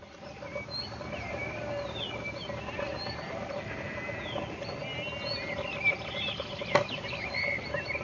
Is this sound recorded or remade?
recorded